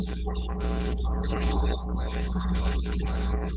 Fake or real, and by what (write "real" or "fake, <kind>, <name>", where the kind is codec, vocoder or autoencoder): fake, codec, HILCodec